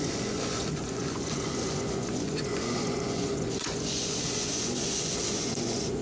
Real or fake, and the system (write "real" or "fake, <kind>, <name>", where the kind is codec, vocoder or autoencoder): fake, vocoder, Vocos